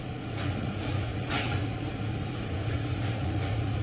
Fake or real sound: fake